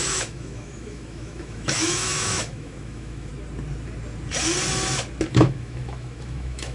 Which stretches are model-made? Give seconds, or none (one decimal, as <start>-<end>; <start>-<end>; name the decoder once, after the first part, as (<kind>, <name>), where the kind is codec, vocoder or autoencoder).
0.0-3.3 (autoencoder, DAC-VAE); 5.3-6.7